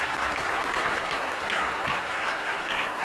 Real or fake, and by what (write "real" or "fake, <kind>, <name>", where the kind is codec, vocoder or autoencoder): fake, codec, SNAC